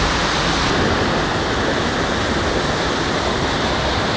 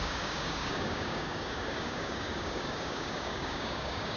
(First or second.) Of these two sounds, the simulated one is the second